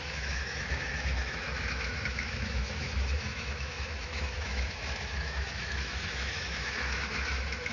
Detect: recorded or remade remade